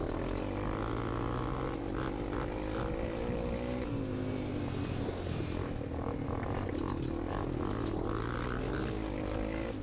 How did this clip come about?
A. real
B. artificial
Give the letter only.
A